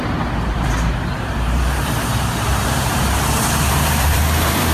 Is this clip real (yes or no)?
no